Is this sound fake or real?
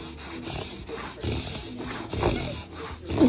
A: real